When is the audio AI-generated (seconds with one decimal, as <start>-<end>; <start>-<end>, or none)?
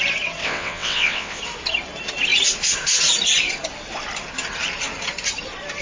0.4-1.4